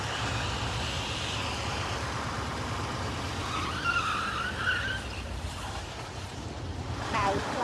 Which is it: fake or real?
fake